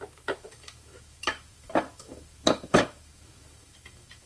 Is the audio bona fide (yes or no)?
no